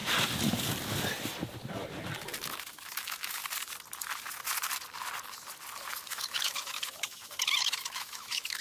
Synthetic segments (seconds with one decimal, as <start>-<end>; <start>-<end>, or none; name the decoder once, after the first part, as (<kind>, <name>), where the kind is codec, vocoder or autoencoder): 2.7-3.4 (autoencoder, DAC-VAE); 6.0-8.6